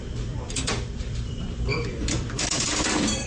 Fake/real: fake